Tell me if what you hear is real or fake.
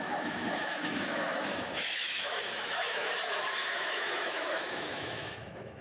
fake